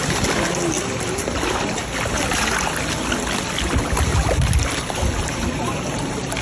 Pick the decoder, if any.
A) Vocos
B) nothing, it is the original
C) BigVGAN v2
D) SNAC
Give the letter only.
B